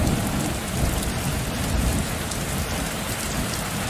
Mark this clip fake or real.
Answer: real